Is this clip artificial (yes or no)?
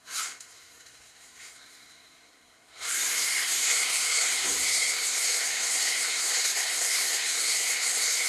yes